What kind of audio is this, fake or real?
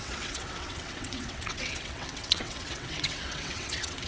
fake